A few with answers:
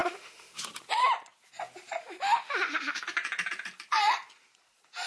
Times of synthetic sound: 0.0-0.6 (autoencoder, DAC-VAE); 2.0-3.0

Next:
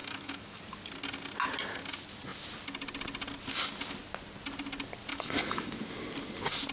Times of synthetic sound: 0.0-0.6 (autoencoder, DAC-VAE); 5.1-5.8

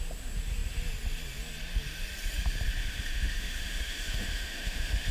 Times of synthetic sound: 2.8-5.1 (autoencoder, DAC-VAE)